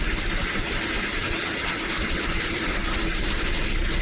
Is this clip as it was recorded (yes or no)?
yes